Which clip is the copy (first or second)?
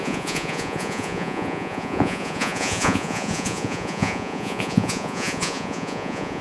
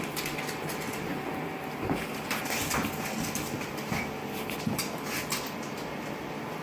first